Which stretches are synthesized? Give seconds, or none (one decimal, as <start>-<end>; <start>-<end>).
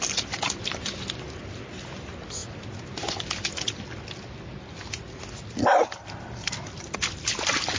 none